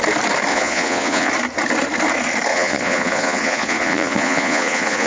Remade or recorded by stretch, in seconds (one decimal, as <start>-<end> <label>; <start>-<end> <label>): 0.0-0.5 recorded; 0.5-1.3 remade; 1.3-2.5 recorded; 2.5-5.1 remade

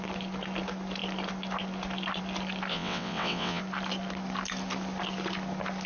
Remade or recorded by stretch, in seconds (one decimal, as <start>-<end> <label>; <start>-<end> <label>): 0.0-2.7 recorded; 2.7-3.6 remade; 3.6-5.9 recorded

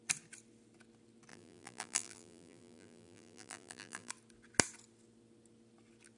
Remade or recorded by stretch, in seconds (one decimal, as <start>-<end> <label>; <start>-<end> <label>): 0.0-1.3 recorded; 1.3-4.1 remade; 4.1-6.2 recorded

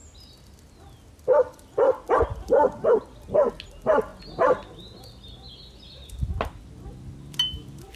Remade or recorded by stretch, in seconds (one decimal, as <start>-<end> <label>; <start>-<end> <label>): 0.0-4.1 recorded; 4.1-4.8 remade; 4.8-8.0 recorded